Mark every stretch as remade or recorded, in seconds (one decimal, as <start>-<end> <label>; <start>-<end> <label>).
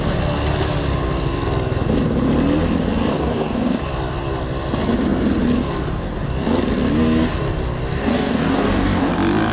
0.0-3.1 recorded; 3.1-3.8 remade; 3.8-8.0 recorded; 8.0-9.1 remade; 9.1-9.5 recorded